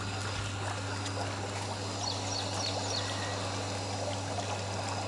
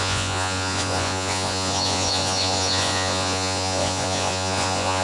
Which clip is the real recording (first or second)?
first